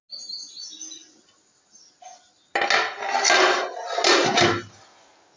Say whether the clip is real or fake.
real